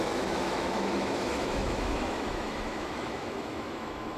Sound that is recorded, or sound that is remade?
remade